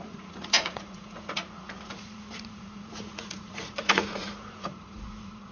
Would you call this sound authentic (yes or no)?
no